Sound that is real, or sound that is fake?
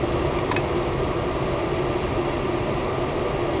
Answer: real